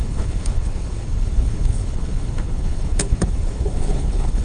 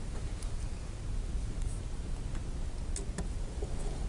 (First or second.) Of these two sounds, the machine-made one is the first